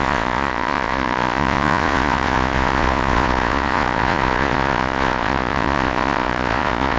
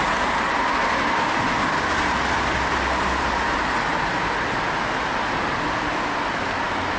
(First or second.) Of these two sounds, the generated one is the first